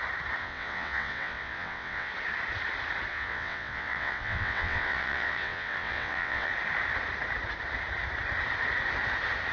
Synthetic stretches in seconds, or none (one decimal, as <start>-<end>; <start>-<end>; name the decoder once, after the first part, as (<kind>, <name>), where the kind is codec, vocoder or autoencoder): 0.4-2.1 (vocoder, WaveNeXt); 3.1-6.5